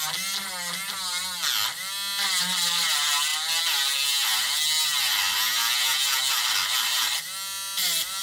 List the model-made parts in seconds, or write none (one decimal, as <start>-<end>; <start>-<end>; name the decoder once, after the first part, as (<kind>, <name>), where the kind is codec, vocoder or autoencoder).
none